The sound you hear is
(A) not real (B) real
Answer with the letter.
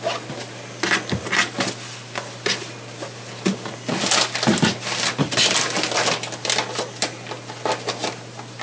B